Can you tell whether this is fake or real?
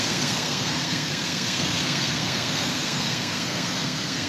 fake